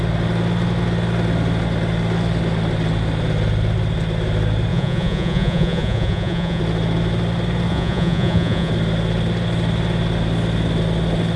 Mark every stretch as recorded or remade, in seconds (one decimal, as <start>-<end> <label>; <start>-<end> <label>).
0.0-4.7 recorded; 4.7-6.6 remade; 6.6-7.7 recorded; 7.7-8.7 remade; 8.7-11.4 recorded